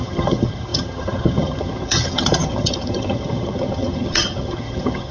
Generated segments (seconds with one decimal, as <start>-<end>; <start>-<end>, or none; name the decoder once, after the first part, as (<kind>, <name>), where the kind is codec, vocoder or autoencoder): 0.0-5.1 (vocoder, HiFi-GAN)